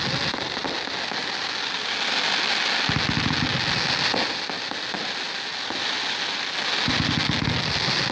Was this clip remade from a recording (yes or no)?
no